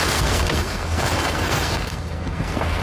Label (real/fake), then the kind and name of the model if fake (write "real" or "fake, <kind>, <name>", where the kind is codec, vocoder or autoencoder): fake, codec, SNAC